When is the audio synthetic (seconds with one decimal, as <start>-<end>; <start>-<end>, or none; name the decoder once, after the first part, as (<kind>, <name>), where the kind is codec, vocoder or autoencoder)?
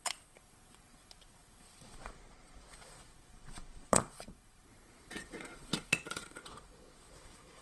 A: 0.0-7.6 (vocoder, Vocos)